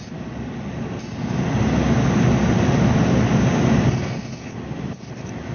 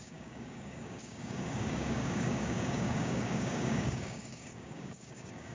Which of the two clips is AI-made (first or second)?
second